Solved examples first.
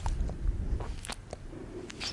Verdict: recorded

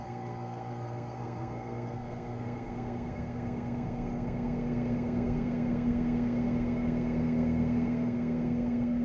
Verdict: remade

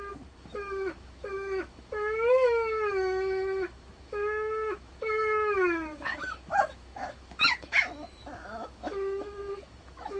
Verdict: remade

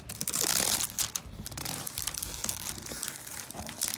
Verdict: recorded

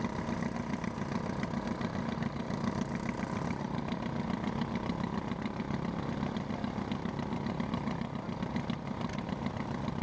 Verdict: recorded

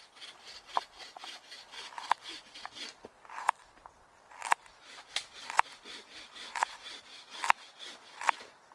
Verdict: recorded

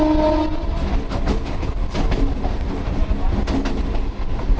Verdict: recorded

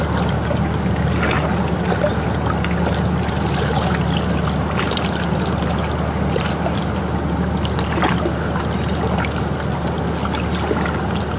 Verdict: recorded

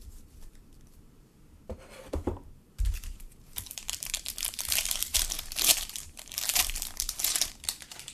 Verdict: remade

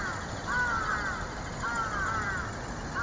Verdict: recorded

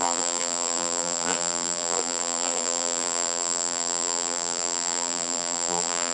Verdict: remade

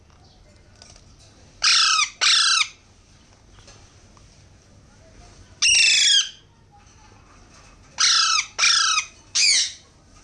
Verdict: recorded